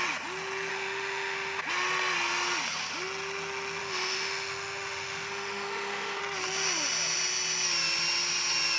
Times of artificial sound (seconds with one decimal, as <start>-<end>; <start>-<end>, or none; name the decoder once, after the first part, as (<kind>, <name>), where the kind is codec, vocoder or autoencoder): 0.7-1.6 (autoencoder, DAC-VAE); 3.8-6.2